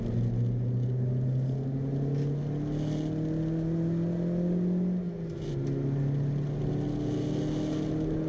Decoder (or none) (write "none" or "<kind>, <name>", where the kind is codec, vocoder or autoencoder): none